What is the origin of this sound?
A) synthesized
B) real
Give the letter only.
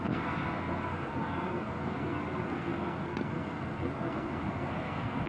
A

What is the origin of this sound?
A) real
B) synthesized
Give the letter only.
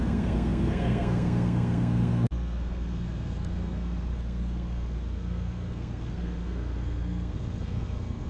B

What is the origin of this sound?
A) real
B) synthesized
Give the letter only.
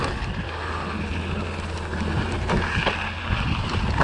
A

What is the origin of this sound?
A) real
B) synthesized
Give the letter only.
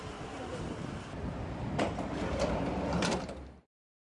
A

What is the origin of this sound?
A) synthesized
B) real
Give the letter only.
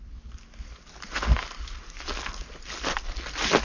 B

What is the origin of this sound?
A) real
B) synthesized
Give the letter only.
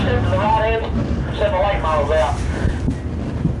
A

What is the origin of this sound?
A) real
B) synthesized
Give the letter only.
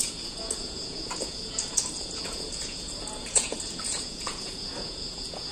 B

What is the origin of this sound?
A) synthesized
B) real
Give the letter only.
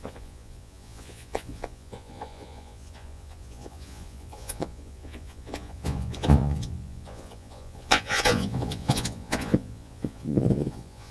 A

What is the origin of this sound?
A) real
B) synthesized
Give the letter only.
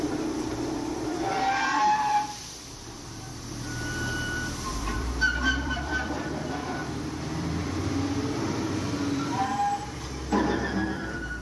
B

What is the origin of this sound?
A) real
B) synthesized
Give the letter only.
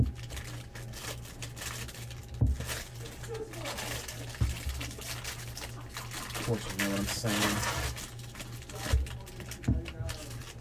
A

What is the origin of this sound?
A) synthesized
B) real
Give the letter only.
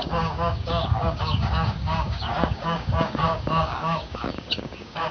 A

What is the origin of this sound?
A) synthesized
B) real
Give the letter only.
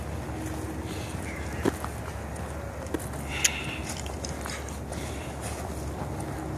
B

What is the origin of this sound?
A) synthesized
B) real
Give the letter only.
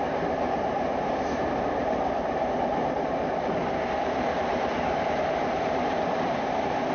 A